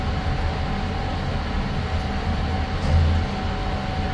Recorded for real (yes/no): yes